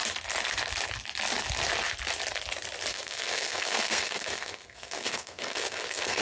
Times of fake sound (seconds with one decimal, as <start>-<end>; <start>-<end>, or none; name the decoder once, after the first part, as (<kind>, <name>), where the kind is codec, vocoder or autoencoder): 2.9-6.2 (codec, SNAC)